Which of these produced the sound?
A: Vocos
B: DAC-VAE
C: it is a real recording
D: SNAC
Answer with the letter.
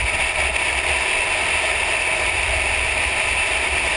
C